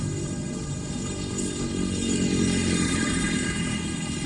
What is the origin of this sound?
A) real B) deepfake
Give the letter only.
B